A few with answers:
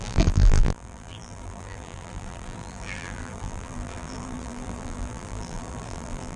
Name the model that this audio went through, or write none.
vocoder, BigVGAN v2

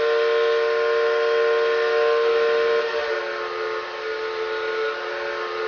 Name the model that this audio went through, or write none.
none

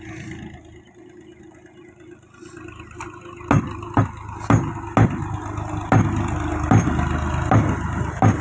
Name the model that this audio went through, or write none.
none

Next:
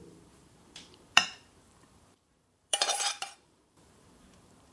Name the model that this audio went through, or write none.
vocoder, BigVGAN v2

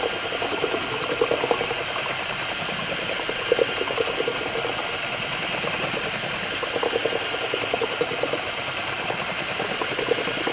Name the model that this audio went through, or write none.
none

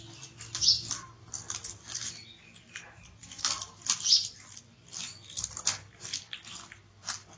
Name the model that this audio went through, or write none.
none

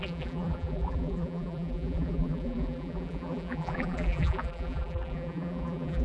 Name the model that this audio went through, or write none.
vocoder, BigVGAN v2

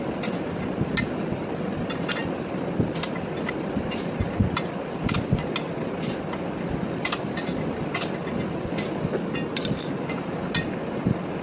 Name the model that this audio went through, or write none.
none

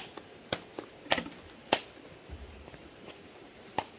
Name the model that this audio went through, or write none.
vocoder, BigVGAN v2